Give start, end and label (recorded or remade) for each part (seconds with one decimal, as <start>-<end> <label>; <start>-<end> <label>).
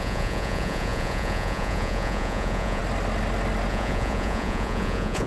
0.0-2.8 remade; 2.8-3.7 recorded; 3.7-5.3 remade